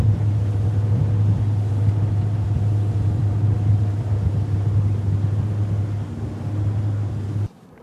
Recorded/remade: recorded